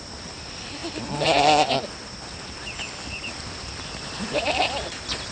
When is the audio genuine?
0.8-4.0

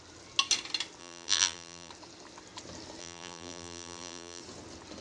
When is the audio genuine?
0.0-1.0; 1.9-3.0; 4.4-5.0

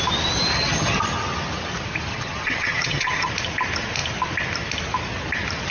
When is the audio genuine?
0.0-0.5; 1.0-2.1; 3.3-5.7

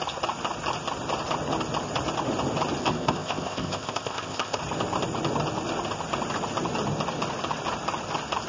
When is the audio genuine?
0.0-2.8; 4.6-8.5